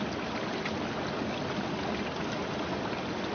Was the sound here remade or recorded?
recorded